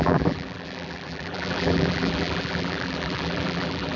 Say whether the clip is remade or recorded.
remade